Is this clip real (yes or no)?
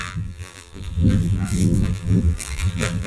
no